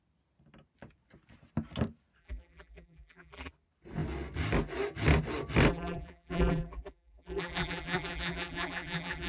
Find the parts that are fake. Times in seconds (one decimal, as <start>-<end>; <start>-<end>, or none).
2.2-3.5; 5.7-9.3